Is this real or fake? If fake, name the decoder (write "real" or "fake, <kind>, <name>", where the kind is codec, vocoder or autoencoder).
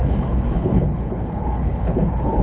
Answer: fake, codec, HILCodec